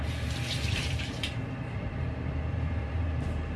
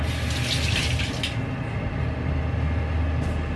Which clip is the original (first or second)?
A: second